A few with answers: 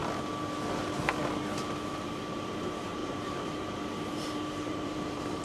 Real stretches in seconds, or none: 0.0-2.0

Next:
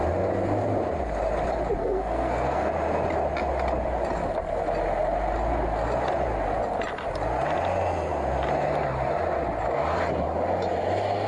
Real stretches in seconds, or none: 0.0-1.8; 2.7-11.3

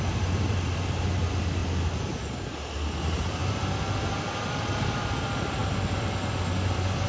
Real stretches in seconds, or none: 1.6-2.5; 3.4-4.4; 5.6-6.3

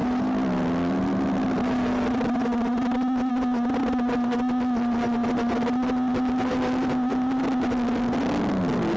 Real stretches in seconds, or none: 0.0-9.0

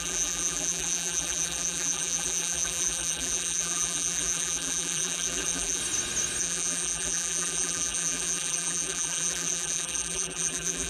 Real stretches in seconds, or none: 5.8-6.4